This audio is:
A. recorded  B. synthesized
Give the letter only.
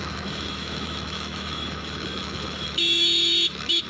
B